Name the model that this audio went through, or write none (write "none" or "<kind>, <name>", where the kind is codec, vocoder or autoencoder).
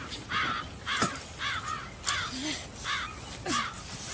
none